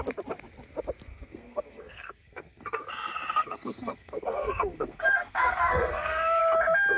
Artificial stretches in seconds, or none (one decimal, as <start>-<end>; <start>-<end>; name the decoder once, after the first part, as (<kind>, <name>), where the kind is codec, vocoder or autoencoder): 1.1-2.8 (codec, SNAC); 3.4-6.4